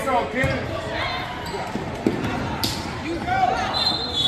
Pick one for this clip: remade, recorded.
recorded